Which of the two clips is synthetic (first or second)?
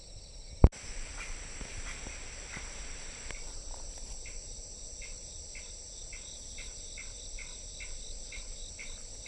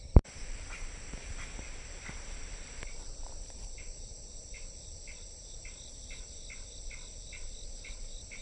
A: second